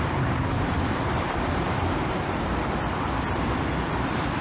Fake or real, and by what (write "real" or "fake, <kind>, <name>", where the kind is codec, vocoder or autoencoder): fake, vocoder, BigVGAN v2